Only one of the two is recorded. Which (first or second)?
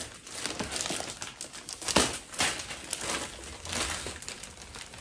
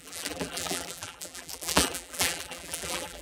first